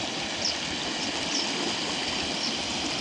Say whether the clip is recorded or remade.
recorded